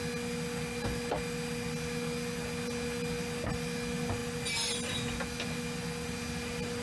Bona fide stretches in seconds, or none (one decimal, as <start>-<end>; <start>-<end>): 0.0-6.8